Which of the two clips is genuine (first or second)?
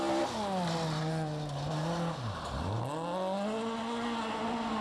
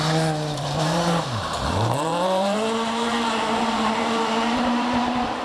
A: first